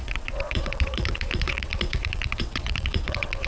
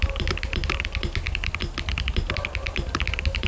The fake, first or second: first